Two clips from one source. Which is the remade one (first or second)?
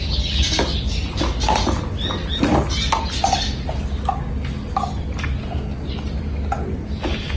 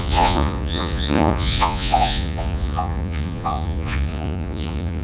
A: second